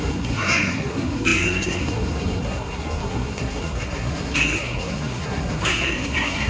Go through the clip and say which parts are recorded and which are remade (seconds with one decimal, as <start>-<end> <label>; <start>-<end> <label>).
0.0-6.5 remade